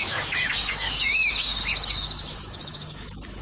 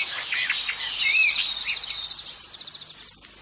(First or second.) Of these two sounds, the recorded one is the second